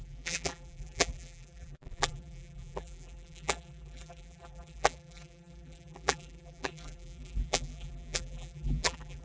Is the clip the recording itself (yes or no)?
no